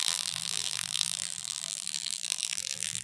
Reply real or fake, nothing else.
fake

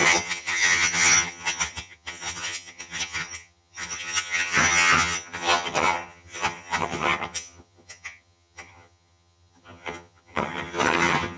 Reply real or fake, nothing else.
fake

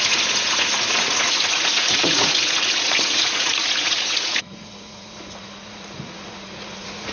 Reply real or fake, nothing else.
fake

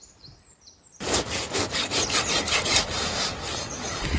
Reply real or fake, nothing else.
real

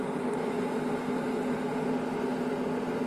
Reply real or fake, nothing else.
real